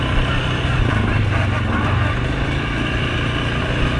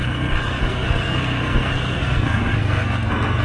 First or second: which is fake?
second